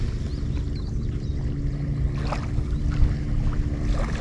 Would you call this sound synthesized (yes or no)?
no